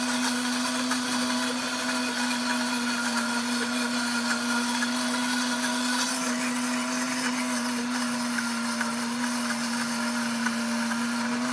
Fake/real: real